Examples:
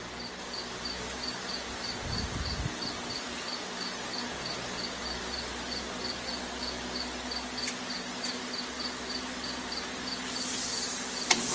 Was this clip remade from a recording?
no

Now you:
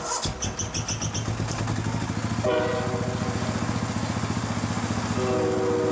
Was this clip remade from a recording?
no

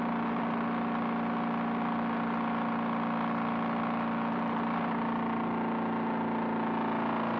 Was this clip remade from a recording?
no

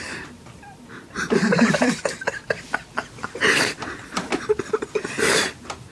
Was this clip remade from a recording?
yes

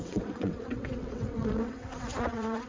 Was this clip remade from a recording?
yes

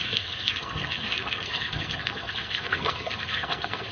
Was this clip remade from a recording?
yes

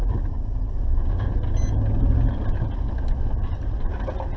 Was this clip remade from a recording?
no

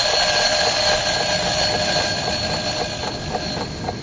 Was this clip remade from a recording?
no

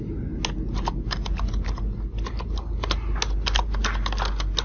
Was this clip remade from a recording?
no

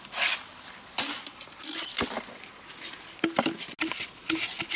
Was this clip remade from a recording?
no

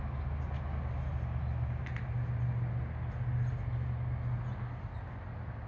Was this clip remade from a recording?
no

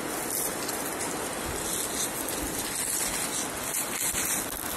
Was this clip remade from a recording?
no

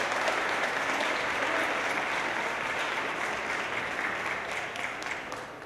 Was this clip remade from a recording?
no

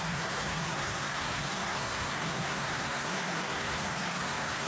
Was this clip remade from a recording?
yes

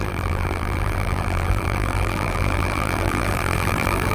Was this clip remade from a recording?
yes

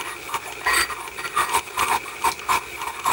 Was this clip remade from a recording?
no